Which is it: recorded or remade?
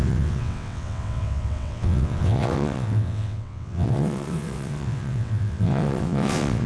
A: remade